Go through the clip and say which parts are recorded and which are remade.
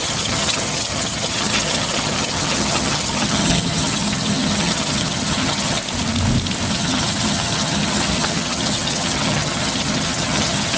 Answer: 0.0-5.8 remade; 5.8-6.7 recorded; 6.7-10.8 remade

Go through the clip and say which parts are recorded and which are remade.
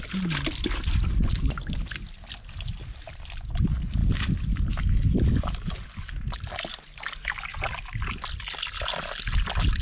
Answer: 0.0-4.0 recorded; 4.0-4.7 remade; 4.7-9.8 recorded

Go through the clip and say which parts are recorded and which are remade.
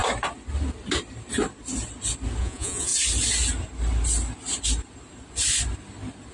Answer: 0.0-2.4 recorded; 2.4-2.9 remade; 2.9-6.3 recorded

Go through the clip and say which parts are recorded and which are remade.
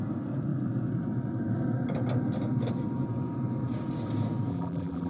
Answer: 0.0-4.5 recorded; 4.5-5.1 remade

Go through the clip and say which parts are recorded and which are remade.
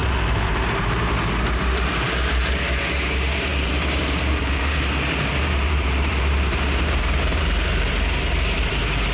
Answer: 0.0-9.1 remade